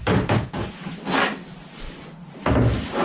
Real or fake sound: fake